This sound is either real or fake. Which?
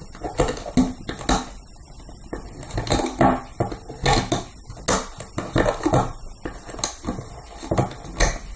real